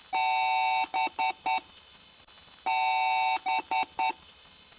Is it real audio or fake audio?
real